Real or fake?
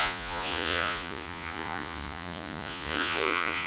fake